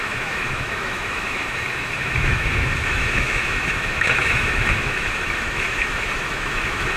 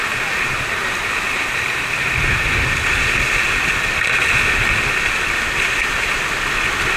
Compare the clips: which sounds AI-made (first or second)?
first